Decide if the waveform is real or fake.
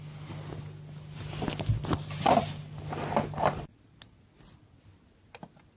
real